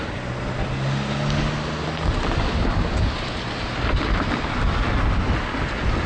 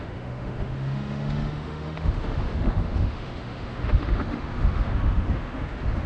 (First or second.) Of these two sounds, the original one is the first